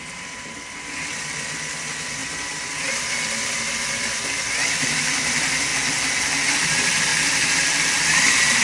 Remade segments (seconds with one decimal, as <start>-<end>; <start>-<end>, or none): 0.0-5.7; 6.5-7.1; 8.0-8.6